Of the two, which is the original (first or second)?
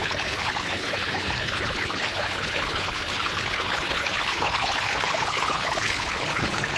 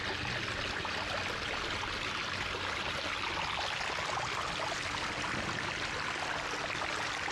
second